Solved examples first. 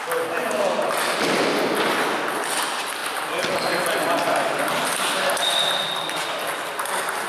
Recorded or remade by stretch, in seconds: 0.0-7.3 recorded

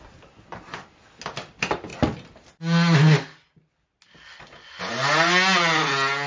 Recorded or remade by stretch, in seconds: 0.0-6.3 recorded

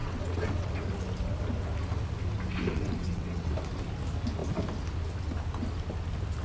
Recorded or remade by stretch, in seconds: 0.0-0.7 remade; 0.7-2.7 recorded; 2.7-3.5 remade; 3.5-6.4 recorded

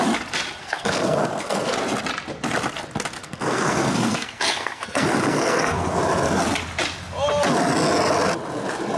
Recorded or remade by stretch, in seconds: 0.0-0.6 recorded; 0.6-1.8 remade; 1.8-3.2 recorded; 3.2-6.0 remade; 6.0-9.0 recorded

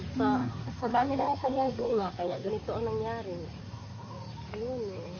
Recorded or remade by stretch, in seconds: 0.0-0.4 recorded; 0.4-2.5 remade; 2.5-3.6 recorded; 3.6-4.1 remade; 4.1-5.2 recorded

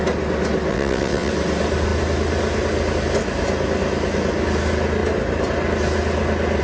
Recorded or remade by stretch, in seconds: 0.0-0.7 recorded; 0.7-1.3 remade; 1.3-6.6 recorded